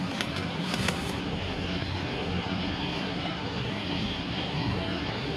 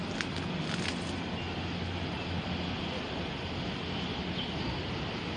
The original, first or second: second